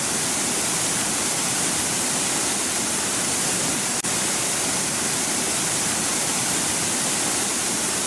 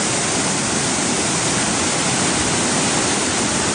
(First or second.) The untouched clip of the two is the second